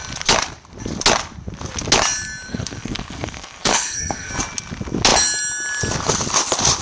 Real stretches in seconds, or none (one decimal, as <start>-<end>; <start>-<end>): 0.0-2.5; 4.3-6.8